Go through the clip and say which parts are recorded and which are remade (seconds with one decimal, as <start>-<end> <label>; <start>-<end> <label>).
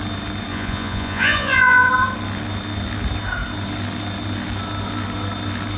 0.0-0.5 recorded; 0.5-1.9 remade; 1.9-5.8 recorded